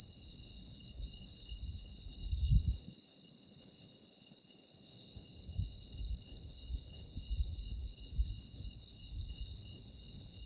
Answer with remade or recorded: remade